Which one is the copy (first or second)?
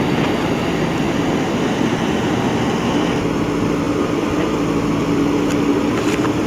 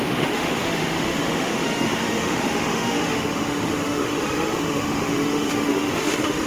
second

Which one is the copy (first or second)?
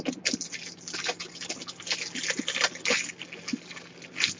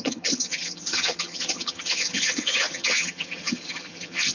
second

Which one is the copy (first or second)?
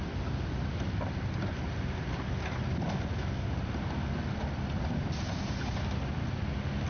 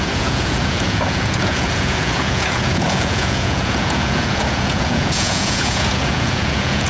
second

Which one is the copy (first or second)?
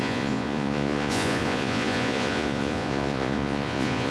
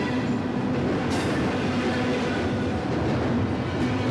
first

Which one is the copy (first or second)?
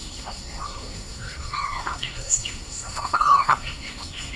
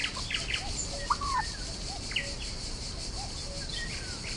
first